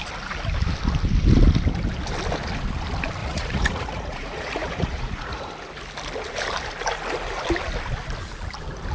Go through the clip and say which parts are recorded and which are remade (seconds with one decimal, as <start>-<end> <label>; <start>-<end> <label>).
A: 0.0-3.2 recorded; 3.2-5.4 remade; 5.4-8.9 recorded